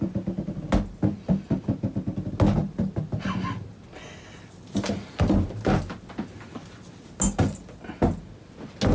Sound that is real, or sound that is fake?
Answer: real